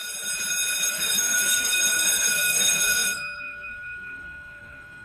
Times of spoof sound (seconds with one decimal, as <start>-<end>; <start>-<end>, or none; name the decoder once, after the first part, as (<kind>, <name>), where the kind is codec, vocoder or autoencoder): 0.9-5.0 (codec, SNAC)